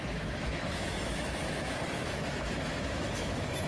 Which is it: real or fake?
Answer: fake